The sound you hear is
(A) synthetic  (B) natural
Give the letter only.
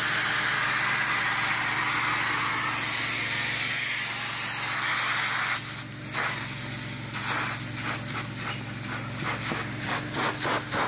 B